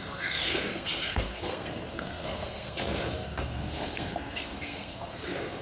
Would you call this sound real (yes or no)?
no